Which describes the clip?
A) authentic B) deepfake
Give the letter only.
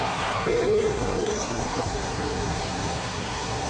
B